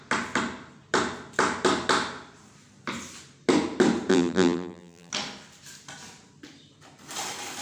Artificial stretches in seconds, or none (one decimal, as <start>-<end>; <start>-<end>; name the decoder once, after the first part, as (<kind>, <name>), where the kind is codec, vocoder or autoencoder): 4.1-5.1 (vocoder, BigVGAN v2)